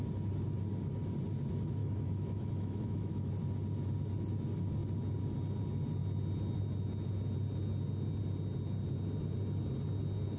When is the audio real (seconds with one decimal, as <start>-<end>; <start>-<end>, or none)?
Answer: 0.0-1.8; 3.3-10.4